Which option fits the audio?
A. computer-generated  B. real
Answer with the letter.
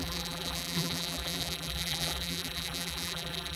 A